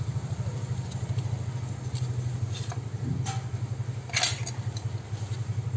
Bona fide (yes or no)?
yes